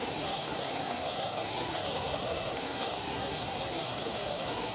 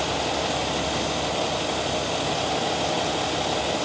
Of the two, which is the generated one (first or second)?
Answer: first